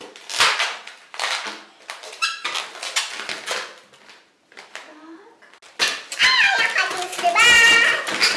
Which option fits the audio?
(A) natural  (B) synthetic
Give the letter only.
A